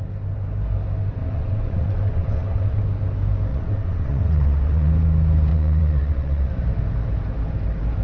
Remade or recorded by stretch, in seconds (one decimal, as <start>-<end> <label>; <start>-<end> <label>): 0.0-1.2 recorded; 1.2-2.8 remade; 2.8-3.5 recorded; 3.5-4.9 remade; 4.9-5.5 recorded; 5.5-6.5 remade; 6.5-8.0 recorded